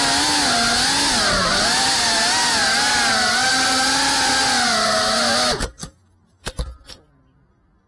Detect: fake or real real